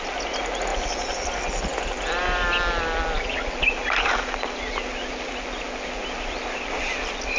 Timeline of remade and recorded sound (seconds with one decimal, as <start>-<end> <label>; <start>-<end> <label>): 0.0-7.4 recorded